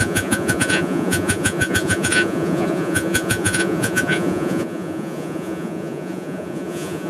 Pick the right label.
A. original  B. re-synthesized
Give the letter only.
B